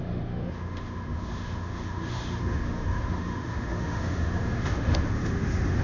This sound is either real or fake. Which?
fake